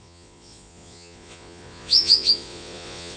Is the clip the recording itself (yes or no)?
no